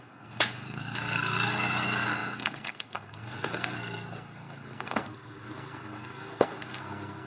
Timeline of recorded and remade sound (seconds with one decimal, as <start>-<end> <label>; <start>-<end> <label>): 0.0-7.3 remade